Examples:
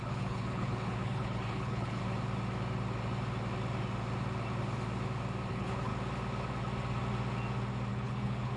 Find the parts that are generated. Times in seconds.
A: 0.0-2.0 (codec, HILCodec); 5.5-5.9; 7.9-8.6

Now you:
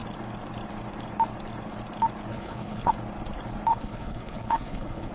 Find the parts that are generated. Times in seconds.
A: 2.3-2.9 (codec, HILCodec); 3.7-5.1

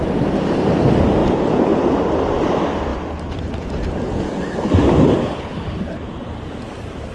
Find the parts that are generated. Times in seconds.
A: 5.2-5.8 (codec, HILCodec)

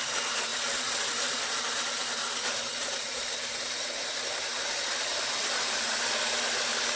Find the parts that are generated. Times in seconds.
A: none

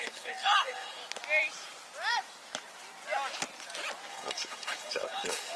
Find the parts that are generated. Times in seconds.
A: 0.0-1.0 (codec, HILCodec); 4.1-5.6